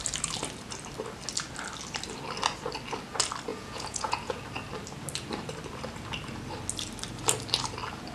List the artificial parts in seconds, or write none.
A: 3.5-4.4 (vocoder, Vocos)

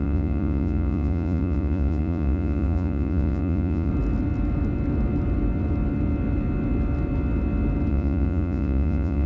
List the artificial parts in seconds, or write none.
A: 0.0-3.9 (vocoder, Vocos); 7.9-9.3

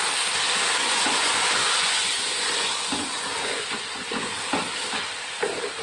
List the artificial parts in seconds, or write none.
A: 0.8-4.3 (vocoder, Vocos)

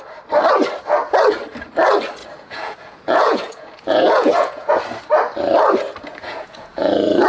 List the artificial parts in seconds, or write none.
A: 2.2-4.7 (vocoder, Vocos); 6.1-7.3